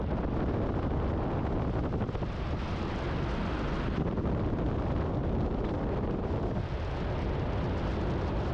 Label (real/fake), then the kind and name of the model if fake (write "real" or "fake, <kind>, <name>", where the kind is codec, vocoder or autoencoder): real